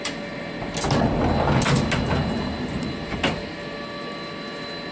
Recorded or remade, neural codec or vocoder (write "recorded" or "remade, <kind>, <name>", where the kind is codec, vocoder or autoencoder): recorded